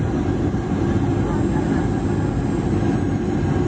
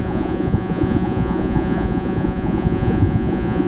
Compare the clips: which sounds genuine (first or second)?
first